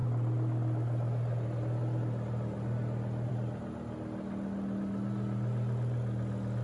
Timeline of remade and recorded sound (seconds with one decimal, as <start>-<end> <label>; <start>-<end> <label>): 0.0-6.6 recorded